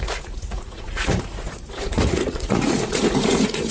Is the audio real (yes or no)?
no